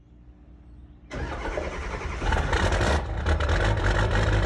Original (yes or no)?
yes